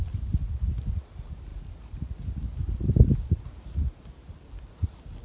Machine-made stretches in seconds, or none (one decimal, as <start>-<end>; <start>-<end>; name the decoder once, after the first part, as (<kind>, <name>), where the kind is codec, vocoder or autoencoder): none